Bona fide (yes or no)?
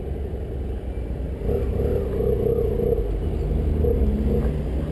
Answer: yes